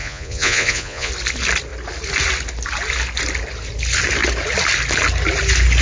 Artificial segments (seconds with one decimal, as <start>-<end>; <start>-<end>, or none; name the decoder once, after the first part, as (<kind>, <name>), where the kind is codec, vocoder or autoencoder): 0.0-1.1 (vocoder, Vocos)